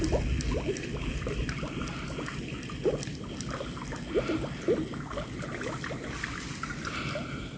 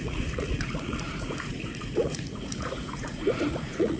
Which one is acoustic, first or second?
first